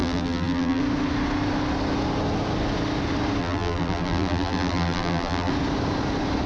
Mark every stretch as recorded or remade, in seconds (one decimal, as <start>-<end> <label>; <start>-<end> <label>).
0.0-0.8 remade; 0.8-3.4 recorded; 3.4-5.5 remade; 5.5-6.5 recorded